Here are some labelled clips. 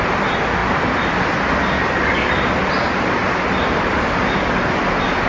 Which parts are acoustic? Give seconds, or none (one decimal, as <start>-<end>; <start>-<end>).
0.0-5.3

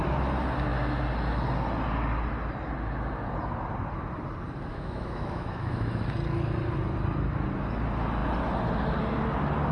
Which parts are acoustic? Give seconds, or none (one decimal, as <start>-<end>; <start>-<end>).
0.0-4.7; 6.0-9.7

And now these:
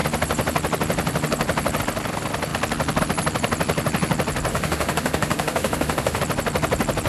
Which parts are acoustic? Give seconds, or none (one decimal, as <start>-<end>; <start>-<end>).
0.0-4.5; 6.2-7.1